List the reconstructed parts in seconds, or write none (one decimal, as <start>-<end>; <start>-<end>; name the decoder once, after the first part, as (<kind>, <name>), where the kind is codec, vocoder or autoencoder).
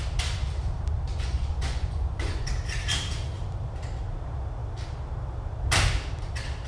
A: 1.1-2.5 (vocoder, Vocos)